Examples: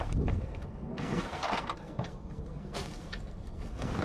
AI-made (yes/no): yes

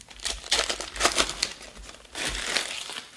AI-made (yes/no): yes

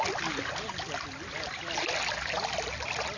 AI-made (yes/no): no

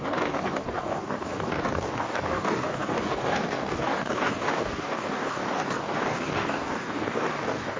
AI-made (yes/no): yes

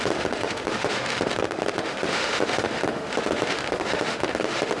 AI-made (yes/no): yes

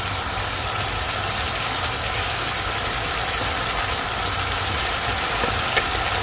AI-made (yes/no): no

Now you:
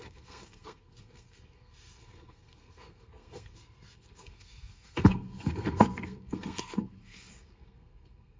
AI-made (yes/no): yes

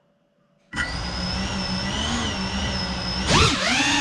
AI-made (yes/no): no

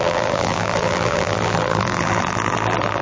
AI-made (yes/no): yes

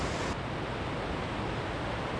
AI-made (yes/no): no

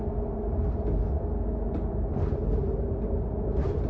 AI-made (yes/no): no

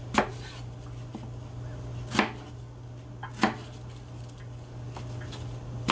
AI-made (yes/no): no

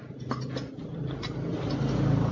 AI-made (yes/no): no